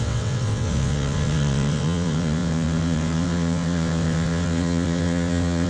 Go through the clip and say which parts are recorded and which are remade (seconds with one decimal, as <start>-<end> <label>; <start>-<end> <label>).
0.0-5.7 remade